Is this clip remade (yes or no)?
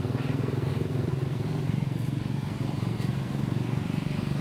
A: yes